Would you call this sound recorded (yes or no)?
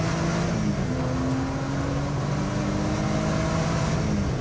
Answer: yes